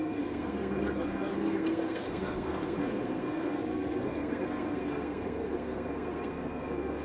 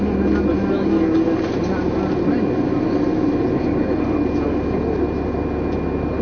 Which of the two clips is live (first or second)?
second